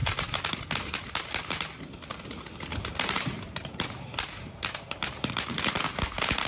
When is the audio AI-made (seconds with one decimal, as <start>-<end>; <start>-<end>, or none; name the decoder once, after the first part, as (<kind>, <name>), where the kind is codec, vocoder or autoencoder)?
0.0-0.6 (vocoder, BigVGAN v2); 2.7-5.7